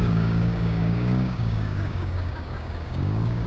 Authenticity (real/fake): fake